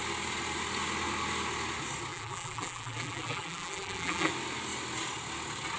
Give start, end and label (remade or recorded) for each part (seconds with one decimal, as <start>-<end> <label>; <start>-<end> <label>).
0.0-2.1 recorded; 2.1-4.3 remade; 4.3-5.8 recorded